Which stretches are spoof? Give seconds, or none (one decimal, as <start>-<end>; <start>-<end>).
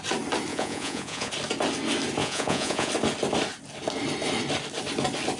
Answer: 0.5-1.3; 2.2-2.9